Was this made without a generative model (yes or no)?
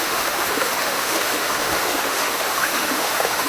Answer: no